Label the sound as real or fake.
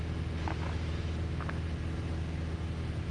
real